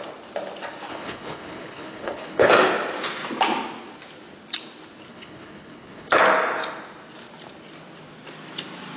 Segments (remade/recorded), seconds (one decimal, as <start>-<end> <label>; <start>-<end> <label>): 0.0-0.9 recorded; 0.9-2.5 remade; 2.5-5.1 recorded; 5.1-6.2 remade; 6.2-9.0 recorded

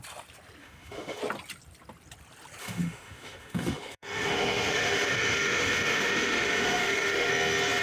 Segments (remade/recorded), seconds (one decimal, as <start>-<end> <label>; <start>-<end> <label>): 0.0-0.6 recorded; 0.6-1.2 remade; 1.2-2.6 recorded; 2.6-7.3 remade; 7.3-7.8 recorded

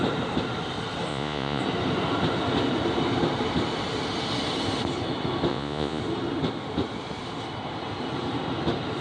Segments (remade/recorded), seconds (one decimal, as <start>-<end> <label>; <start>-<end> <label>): 0.0-1.1 recorded; 1.1-1.6 remade; 1.6-5.5 recorded; 5.5-6.0 remade; 6.0-9.0 recorded

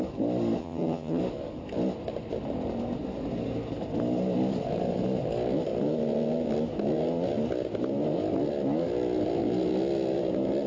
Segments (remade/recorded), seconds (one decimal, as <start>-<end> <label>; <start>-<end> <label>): 0.0-0.6 recorded; 0.6-1.2 remade; 1.2-10.7 recorded

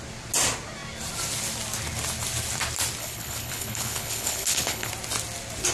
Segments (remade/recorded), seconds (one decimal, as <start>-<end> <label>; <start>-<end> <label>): 0.0-3.0 recorded; 3.0-4.9 remade; 4.9-5.7 recorded